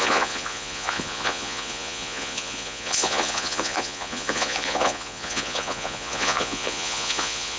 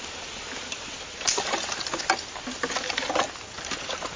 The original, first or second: second